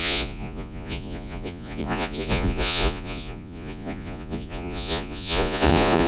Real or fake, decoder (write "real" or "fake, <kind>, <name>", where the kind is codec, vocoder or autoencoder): fake, vocoder, Vocos